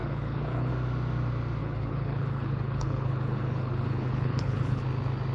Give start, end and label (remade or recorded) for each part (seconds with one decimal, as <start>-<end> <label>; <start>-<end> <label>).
0.0-0.7 remade; 0.7-1.6 recorded; 1.6-4.8 remade; 4.8-5.3 recorded